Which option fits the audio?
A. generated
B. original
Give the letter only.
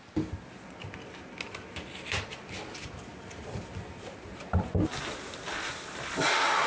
B